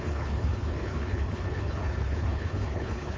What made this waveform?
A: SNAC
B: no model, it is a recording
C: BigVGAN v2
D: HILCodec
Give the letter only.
D